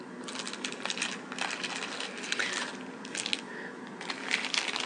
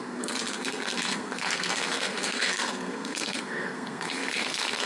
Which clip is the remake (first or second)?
second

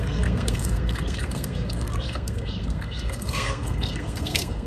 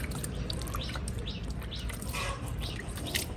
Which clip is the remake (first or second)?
first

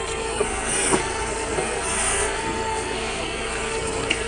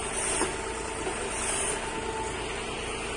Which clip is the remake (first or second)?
first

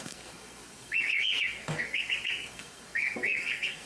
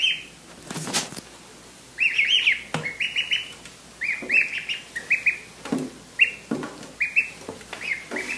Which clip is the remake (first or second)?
first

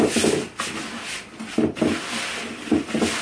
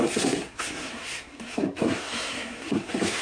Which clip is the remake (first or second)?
second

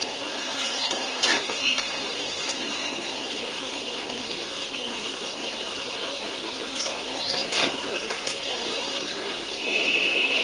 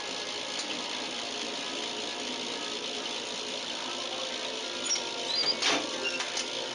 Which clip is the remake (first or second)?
first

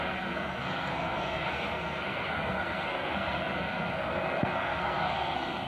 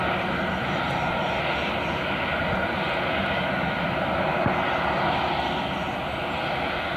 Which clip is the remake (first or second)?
first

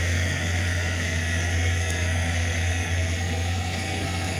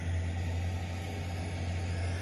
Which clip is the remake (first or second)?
first